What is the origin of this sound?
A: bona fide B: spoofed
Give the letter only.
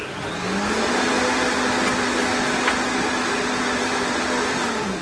A